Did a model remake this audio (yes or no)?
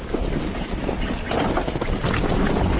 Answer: no